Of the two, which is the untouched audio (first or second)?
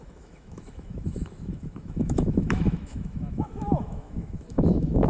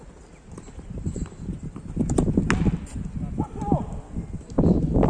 second